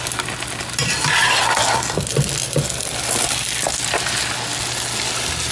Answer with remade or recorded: recorded